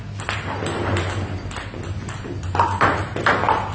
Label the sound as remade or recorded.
recorded